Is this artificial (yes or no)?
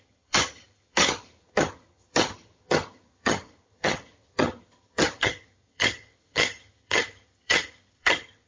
yes